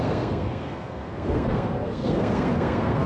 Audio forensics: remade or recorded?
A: remade